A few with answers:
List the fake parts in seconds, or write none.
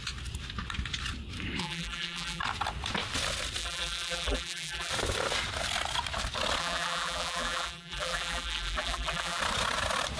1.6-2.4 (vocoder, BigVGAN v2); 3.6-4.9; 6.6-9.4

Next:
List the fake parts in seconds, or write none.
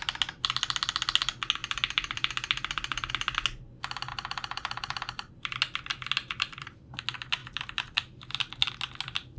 1.6-3.1 (vocoder, BigVGAN v2); 4.1-5.3; 6.2-7.0; 7.4-8.7